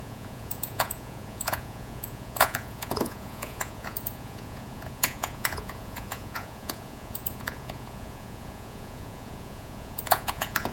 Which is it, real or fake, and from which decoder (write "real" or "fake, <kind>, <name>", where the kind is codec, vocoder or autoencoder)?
fake, vocoder, Vocos